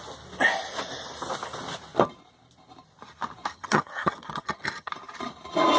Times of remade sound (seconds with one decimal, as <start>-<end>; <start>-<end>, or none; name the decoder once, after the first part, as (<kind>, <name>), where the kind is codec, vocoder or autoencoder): 3.5-4.9 (vocoder, HiFi-GAN)